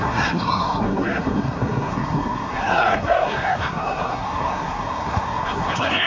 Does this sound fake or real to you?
fake